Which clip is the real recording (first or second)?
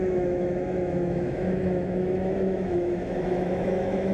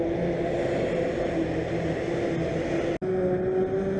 second